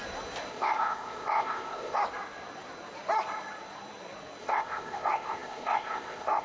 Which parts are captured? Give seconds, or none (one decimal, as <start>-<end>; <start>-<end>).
0.0-0.5; 2.0-4.4